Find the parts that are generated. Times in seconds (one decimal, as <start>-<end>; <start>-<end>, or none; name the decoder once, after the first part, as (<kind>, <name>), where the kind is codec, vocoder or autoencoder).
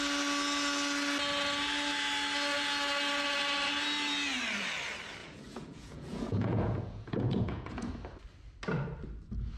5.2-7.9 (vocoder, Vocos)